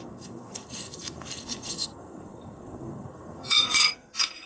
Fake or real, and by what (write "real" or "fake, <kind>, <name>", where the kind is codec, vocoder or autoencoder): fake, codec, SNAC